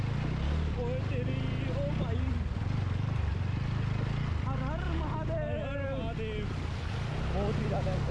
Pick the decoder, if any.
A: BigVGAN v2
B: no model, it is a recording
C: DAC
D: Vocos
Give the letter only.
B